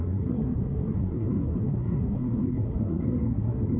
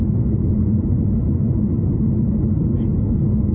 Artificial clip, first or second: first